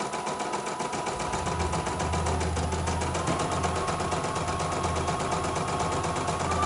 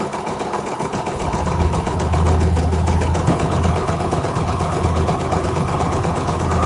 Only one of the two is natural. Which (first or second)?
first